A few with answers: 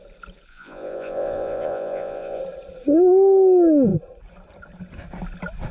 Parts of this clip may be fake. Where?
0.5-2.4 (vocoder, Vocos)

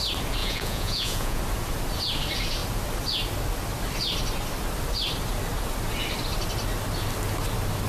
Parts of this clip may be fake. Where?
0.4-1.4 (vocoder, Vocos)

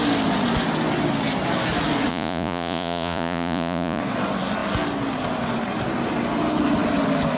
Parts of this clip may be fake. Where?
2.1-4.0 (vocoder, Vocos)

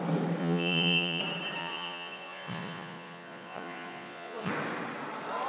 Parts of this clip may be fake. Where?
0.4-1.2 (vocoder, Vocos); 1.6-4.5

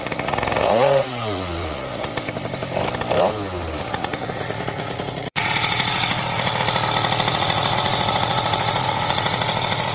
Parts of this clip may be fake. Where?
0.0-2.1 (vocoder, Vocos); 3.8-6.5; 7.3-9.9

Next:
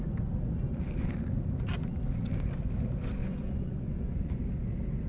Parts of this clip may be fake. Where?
3.2-4.4 (vocoder, Vocos)

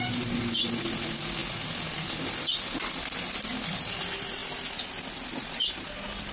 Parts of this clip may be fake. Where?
none

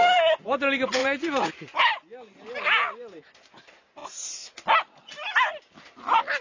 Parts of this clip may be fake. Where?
1.0-1.5 (vocoder, Vocos)